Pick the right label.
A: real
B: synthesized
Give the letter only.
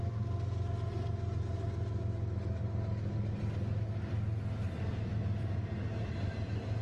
A